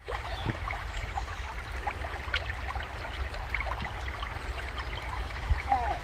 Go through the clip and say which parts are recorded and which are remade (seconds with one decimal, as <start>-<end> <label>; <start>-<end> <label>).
0.0-1.5 remade; 1.5-5.1 recorded; 5.1-6.0 remade

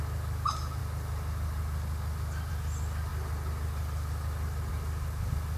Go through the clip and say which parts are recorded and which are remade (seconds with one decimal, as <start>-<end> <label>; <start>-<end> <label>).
0.0-5.6 recorded

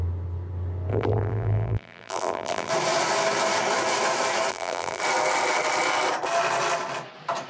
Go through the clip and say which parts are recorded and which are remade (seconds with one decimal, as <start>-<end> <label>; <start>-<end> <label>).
0.0-0.9 recorded; 0.9-2.7 remade; 2.7-4.5 recorded; 4.5-5.0 remade; 5.0-7.5 recorded

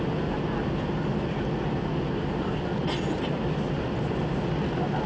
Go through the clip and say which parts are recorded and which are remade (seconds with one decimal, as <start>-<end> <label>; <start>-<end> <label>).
0.0-5.1 recorded

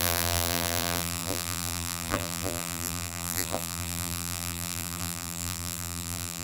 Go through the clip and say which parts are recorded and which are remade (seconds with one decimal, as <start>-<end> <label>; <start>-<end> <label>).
0.0-6.4 remade

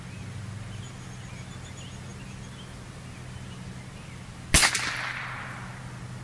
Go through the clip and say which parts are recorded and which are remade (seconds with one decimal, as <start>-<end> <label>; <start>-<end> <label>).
0.0-6.2 recorded

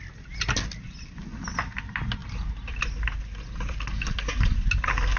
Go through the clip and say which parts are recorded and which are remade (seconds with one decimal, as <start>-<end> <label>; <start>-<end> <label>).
0.0-5.2 recorded